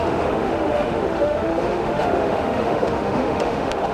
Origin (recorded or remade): remade